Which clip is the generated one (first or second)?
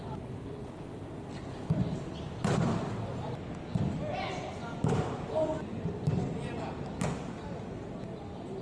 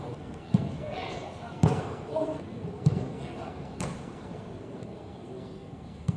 second